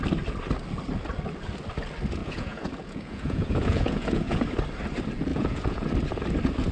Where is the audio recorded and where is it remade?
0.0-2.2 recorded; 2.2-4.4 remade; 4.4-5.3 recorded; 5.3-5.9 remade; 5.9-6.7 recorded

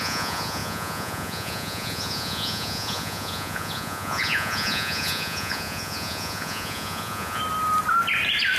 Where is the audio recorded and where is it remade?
0.0-7.4 remade; 7.4-8.6 recorded

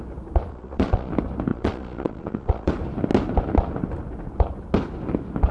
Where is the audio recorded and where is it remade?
0.0-0.5 recorded; 0.5-1.1 remade; 1.1-1.5 recorded; 1.5-2.7 remade; 2.7-5.5 recorded

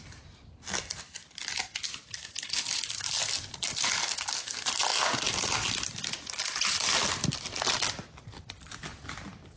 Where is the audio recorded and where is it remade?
0.0-9.6 recorded

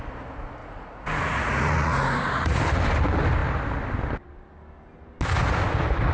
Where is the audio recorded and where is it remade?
0.0-0.6 recorded; 0.6-2.6 remade; 2.6-6.1 recorded